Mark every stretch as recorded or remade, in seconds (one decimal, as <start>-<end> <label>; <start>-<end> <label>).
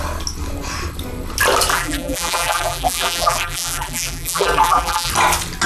0.0-1.7 recorded; 1.7-5.1 remade; 5.1-5.7 recorded